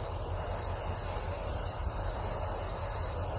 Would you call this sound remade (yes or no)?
no